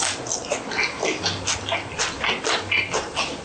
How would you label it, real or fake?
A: real